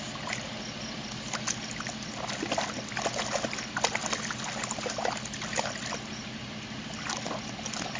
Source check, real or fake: real